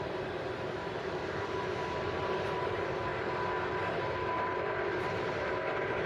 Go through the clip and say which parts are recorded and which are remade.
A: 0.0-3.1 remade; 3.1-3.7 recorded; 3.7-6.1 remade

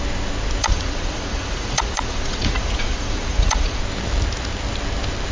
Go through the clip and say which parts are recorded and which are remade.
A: 0.0-0.6 recorded; 0.6-3.8 remade; 3.8-5.3 recorded

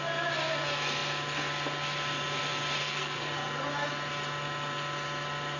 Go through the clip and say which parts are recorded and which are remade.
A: 0.0-2.8 recorded; 2.8-3.3 remade; 3.3-5.6 recorded

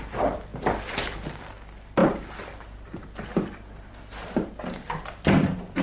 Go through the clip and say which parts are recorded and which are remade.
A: 0.0-5.8 recorded